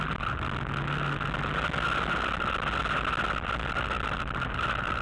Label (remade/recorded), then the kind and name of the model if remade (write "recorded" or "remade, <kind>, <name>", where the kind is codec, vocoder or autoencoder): recorded